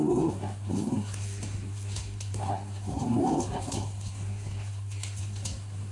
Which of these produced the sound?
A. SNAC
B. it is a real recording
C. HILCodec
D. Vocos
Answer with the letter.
A